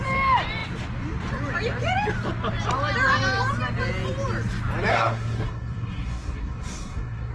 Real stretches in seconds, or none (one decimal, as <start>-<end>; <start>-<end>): 0.0-4.9